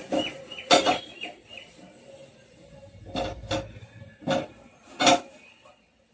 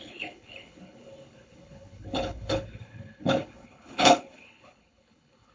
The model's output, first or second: second